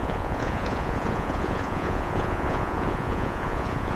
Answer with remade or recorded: remade